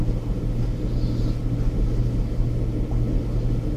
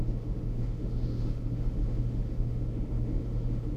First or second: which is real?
first